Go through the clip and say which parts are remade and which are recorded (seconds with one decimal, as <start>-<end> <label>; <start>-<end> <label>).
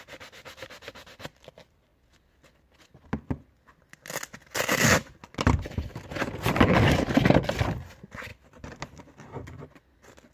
0.0-10.3 recorded